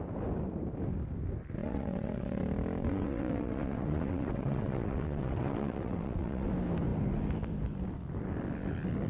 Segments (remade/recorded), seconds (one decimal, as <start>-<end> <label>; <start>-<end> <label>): 0.0-1.6 recorded; 1.6-2.4 remade; 2.4-2.8 recorded; 2.8-6.5 remade; 6.5-9.1 recorded